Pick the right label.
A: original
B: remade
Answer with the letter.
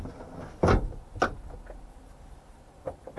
A